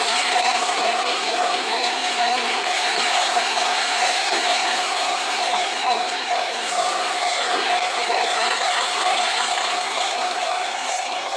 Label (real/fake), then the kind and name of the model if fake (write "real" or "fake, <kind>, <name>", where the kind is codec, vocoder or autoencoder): fake, codec, SNAC